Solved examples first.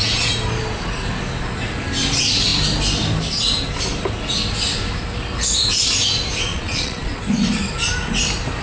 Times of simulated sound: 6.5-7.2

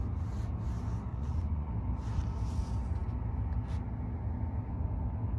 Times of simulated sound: 1.1-1.7

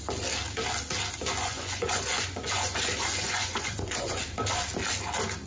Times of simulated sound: 1.4-4.2